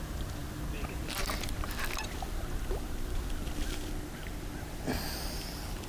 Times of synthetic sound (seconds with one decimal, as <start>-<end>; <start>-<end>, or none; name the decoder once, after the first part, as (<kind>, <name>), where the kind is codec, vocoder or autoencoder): 0.4-3.9 (vocoder, BigVGAN v2)